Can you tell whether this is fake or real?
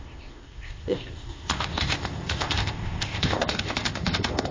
fake